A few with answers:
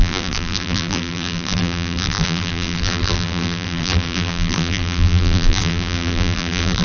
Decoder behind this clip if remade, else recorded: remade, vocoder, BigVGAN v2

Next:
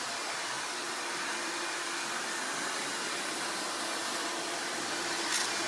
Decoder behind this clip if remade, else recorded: remade, vocoder, BigVGAN v2